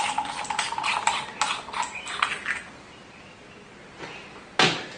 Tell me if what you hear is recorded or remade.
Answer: recorded